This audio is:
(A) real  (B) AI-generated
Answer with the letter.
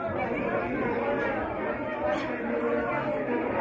A